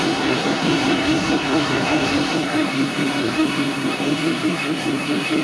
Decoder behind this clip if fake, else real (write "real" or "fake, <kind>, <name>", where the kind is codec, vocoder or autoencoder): fake, codec, SNAC